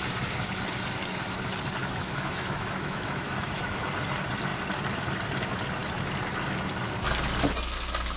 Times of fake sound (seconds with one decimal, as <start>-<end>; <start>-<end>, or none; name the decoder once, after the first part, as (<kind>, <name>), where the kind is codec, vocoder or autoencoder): 1.8-3.8 (autoencoder, DAC-VAE)